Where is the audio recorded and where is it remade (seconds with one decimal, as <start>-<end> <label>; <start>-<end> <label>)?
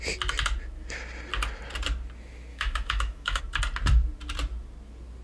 0.0-2.5 recorded; 2.5-3.4 remade; 3.4-5.2 recorded